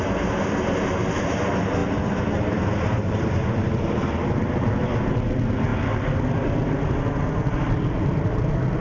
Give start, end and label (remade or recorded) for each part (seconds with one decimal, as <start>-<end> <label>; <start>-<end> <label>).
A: 0.0-1.8 recorded; 1.8-4.7 remade; 4.7-8.8 recorded